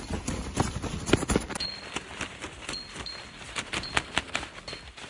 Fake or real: fake